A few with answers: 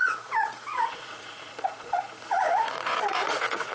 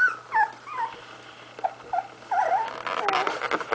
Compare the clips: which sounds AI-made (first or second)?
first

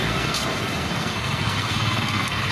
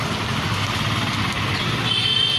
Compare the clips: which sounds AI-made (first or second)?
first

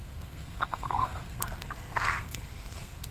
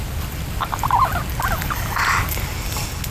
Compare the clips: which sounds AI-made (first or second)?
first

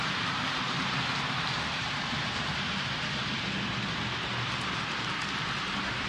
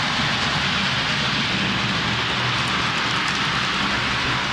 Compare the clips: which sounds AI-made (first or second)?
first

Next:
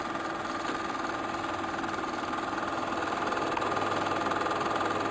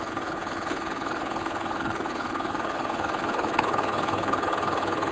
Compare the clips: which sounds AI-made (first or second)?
second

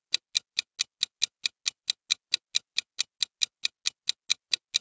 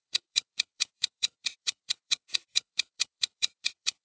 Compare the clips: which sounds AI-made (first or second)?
second